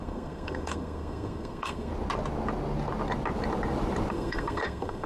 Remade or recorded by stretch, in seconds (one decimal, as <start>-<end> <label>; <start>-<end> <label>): 0.0-1.9 remade; 1.9-4.1 recorded; 4.1-5.1 remade